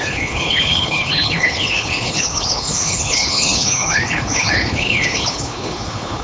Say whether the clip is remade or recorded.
remade